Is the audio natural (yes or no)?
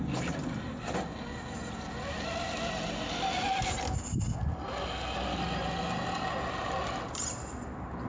yes